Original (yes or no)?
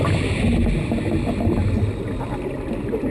yes